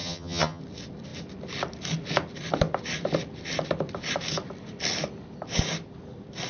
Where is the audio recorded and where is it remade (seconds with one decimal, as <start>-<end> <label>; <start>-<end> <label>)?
0.0-0.6 remade; 0.6-6.5 recorded